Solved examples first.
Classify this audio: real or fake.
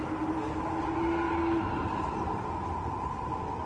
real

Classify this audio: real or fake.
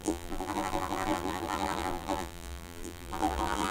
fake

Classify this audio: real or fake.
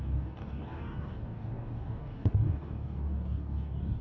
fake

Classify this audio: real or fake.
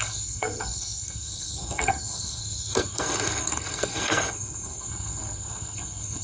fake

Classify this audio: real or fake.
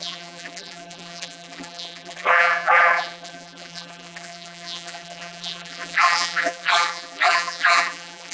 fake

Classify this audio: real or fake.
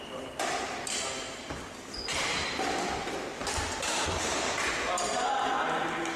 real